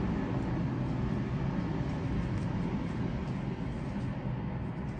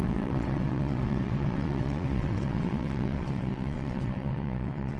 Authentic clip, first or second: first